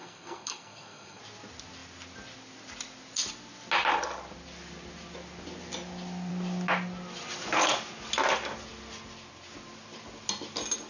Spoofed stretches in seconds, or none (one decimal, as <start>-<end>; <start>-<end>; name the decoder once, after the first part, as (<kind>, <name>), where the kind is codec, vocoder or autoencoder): 0.0-1.2 (codec, SNAC)